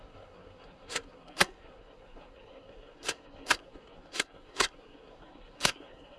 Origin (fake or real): fake